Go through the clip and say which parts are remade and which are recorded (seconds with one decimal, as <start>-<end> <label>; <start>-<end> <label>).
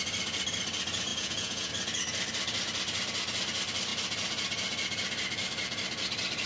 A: 0.0-1.1 recorded; 1.1-1.7 remade; 1.7-6.5 recorded